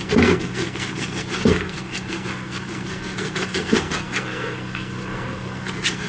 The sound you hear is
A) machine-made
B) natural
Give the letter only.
A